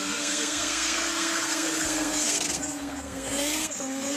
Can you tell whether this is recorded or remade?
remade